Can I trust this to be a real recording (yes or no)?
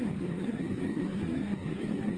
no